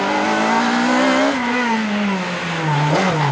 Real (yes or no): yes